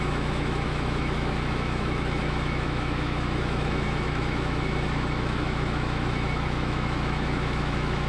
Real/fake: fake